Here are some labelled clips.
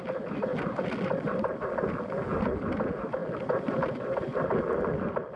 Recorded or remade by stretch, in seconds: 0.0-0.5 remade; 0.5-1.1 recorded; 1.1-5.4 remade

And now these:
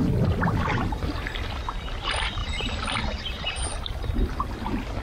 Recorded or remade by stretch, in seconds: 0.0-2.4 remade; 2.4-3.2 recorded; 3.2-5.0 remade